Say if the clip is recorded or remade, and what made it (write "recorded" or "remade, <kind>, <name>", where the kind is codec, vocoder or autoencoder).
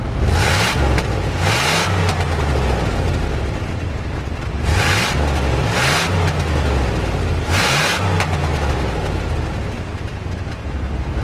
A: recorded